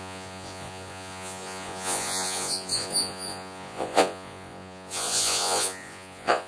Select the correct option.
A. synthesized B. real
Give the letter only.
A